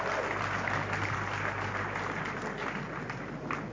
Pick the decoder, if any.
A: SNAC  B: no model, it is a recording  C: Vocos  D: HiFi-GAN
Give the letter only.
B